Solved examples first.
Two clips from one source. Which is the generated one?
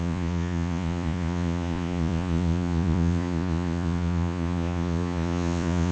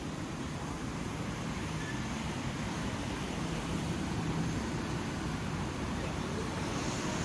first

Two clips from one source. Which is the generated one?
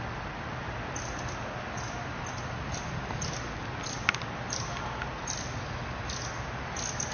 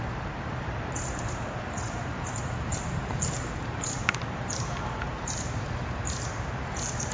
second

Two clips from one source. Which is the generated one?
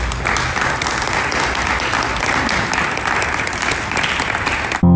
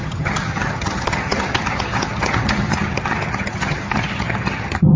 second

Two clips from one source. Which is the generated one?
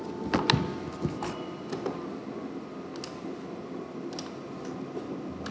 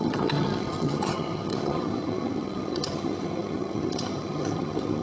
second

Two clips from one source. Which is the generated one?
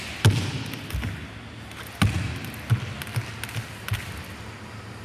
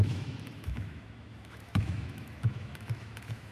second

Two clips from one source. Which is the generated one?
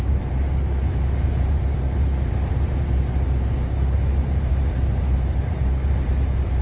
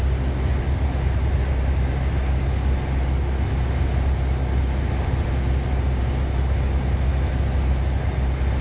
first